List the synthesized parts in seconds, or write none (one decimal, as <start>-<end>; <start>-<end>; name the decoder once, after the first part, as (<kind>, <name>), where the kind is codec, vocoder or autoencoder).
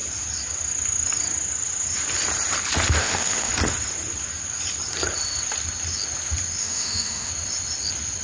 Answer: 3.0-3.5 (autoencoder, DAC-VAE); 6.6-7.3